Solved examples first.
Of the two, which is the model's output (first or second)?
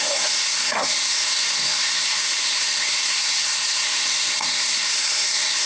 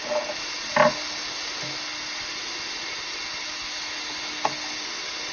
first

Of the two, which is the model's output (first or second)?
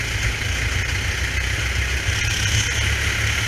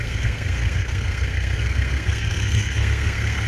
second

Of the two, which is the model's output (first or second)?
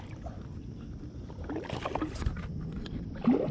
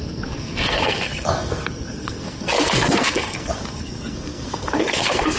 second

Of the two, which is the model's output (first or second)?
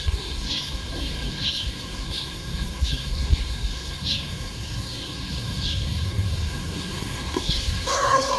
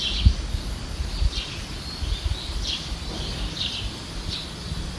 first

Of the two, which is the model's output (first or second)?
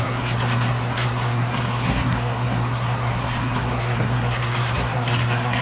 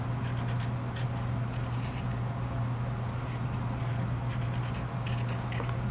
first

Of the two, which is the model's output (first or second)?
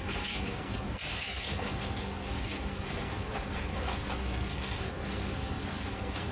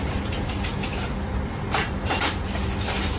first